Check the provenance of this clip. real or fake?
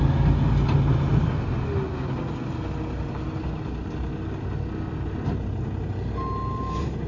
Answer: real